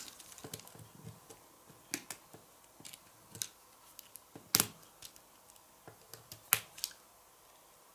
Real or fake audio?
real